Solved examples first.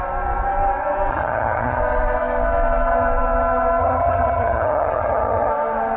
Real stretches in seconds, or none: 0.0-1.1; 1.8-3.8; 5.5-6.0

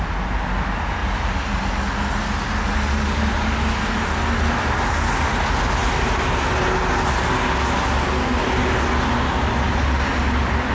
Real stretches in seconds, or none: 0.0-10.7

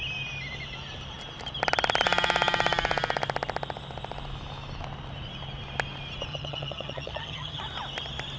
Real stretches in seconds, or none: 0.0-6.3; 7.6-8.4

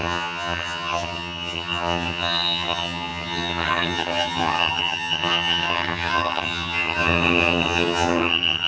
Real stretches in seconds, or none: none

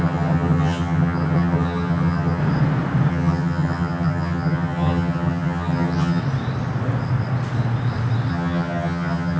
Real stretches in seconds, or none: 2.4-3.1; 6.2-8.3

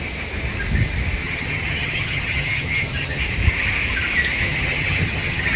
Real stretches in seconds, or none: 0.0-1.2; 3.2-4.4

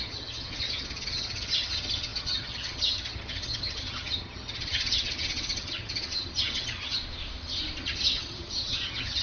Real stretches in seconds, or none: 7.0-7.8